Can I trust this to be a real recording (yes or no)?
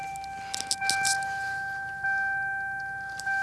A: yes